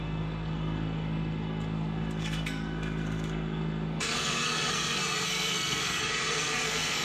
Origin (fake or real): fake